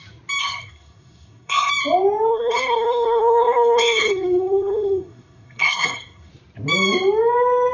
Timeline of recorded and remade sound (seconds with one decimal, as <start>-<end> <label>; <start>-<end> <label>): 0.0-0.4 recorded; 0.4-1.7 remade; 1.7-2.3 recorded; 2.3-6.3 remade; 6.3-7.7 recorded